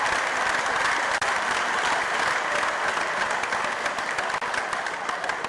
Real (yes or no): yes